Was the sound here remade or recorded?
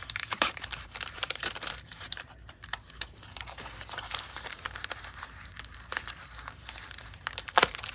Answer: remade